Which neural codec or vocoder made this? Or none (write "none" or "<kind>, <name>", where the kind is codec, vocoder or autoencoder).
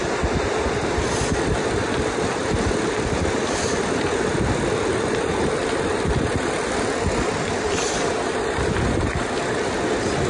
vocoder, BigVGAN v2